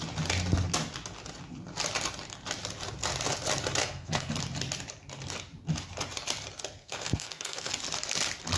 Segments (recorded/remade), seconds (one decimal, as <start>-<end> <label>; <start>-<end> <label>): 0.0-3.8 recorded; 3.8-4.3 remade; 4.3-6.8 recorded; 6.8-7.7 remade; 7.7-8.6 recorded